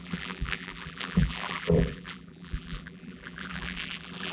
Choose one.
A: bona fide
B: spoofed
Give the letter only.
B